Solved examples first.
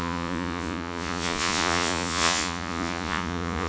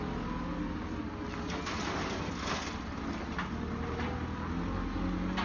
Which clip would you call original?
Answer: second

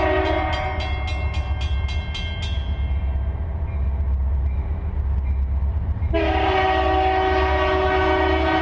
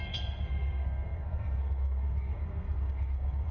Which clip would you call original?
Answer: first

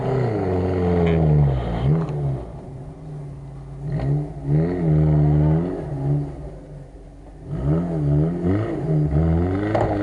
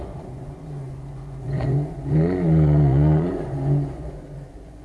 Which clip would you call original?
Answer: first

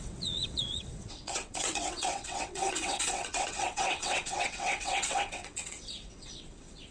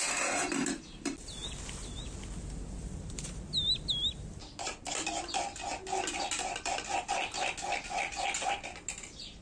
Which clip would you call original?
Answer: second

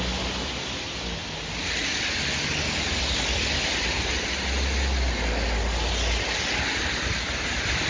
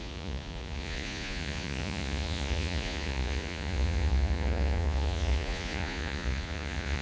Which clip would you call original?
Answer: first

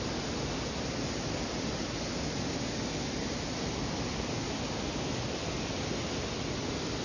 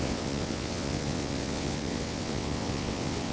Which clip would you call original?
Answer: first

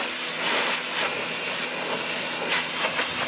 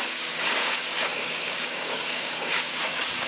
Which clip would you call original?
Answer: first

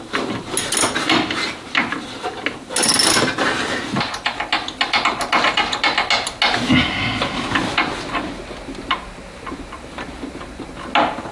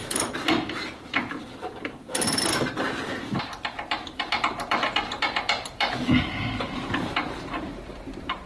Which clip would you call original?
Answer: first